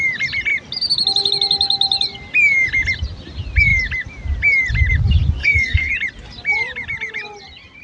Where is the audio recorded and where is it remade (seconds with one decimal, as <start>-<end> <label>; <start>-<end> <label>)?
0.0-5.4 recorded; 5.4-5.9 remade; 5.9-7.8 recorded